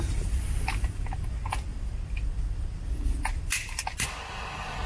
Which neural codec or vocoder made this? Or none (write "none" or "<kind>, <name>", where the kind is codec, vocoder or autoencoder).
none